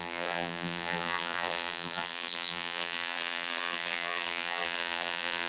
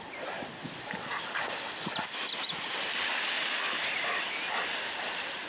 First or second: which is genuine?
second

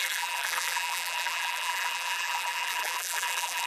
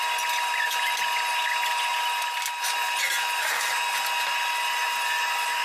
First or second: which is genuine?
second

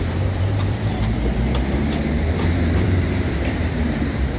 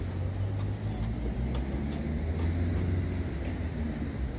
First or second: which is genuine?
second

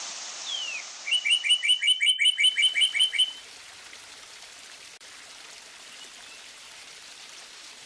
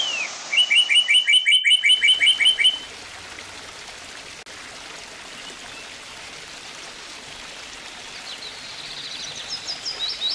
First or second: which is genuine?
second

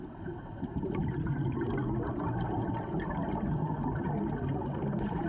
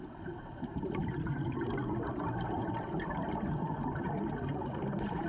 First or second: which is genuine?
first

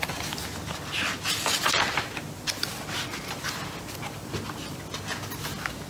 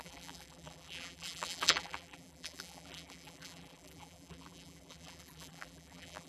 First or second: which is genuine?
first